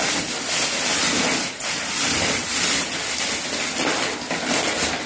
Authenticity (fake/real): real